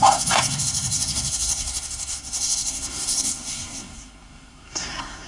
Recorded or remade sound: remade